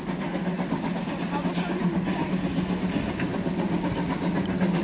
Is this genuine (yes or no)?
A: yes